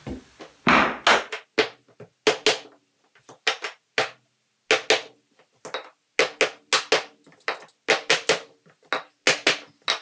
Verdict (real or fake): real